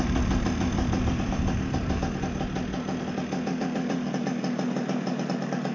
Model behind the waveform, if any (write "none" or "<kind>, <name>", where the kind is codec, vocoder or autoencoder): none